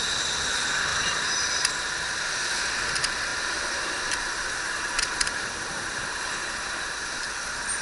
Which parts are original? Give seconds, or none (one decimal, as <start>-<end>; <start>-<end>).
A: 0.0-0.9; 1.7-3.3; 7.2-7.8